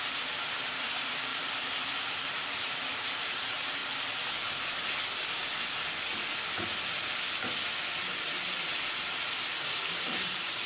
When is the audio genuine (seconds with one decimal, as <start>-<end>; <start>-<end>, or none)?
3.8-8.9

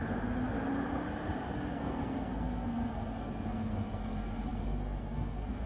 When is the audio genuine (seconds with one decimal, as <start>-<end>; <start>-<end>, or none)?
0.0-1.7

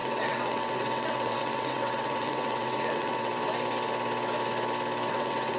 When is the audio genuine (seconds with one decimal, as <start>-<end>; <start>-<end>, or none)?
3.3-5.1

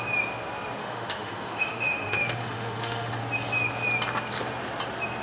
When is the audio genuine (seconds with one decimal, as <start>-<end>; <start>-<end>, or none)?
0.0-0.8; 3.2-5.2